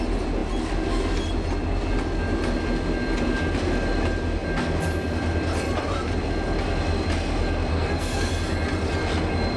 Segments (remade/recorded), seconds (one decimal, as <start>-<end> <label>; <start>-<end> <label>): 0.0-7.7 recorded; 7.7-8.3 remade; 8.3-9.6 recorded